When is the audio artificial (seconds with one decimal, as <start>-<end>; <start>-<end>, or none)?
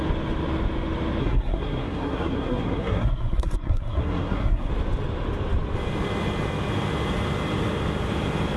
1.2-4.7